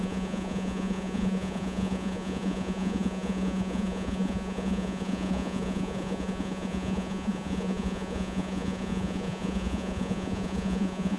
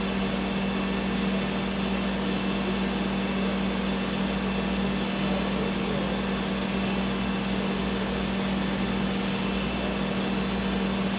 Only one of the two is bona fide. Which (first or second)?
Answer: second